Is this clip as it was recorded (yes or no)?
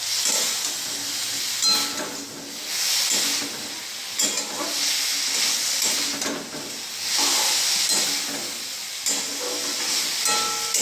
yes